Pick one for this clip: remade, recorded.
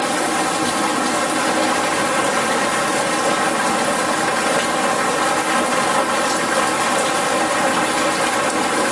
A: recorded